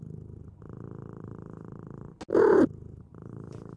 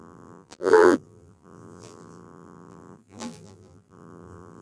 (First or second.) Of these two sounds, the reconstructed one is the second